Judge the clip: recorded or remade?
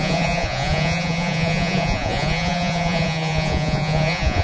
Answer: remade